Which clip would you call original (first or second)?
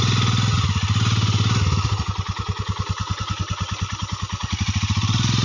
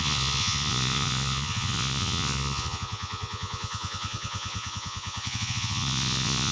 first